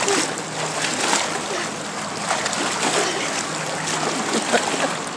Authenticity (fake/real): real